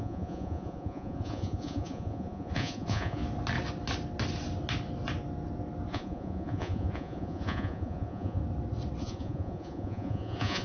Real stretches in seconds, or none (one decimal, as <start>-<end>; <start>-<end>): 3.2-5.9; 8.4-9.0